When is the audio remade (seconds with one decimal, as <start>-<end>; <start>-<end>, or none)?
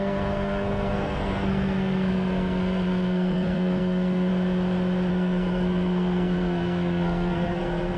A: 0.0-4.3; 5.1-8.0